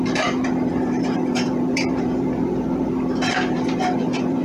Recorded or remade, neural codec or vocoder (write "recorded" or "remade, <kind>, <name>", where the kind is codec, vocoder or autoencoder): remade, vocoder, BigVGAN v2